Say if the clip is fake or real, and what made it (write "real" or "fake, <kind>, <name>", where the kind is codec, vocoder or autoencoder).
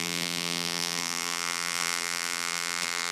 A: fake, vocoder, BigVGAN v2